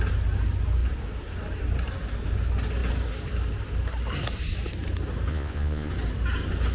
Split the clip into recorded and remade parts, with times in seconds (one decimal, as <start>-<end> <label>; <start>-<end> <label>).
0.0-5.3 recorded; 5.3-5.9 remade; 5.9-6.7 recorded